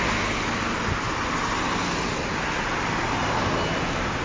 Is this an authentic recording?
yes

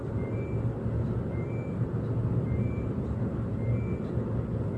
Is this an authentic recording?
yes